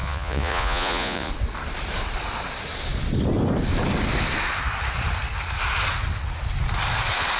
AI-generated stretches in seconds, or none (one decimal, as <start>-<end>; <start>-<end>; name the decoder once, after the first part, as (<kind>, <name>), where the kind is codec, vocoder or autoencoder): 0.0-1.3 (vocoder, Vocos)